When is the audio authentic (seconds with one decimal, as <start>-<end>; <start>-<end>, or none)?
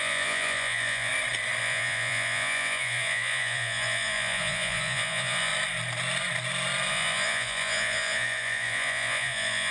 1.1-1.6; 5.5-6.9